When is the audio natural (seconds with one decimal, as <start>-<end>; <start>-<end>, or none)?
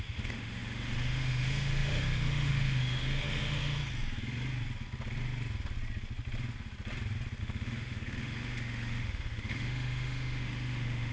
3.8-7.4